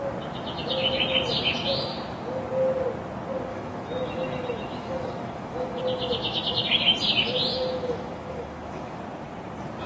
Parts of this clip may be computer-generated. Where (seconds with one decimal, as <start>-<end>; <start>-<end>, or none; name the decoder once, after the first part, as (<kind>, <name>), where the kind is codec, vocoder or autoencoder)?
3.5-5.8 (autoencoder, DAC-VAE); 7.5-9.0